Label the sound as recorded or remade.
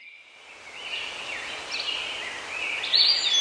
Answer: recorded